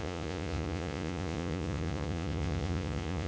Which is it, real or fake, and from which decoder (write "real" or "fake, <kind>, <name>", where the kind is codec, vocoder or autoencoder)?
fake, vocoder, Vocos